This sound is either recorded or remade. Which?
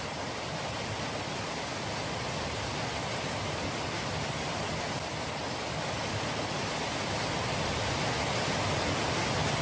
recorded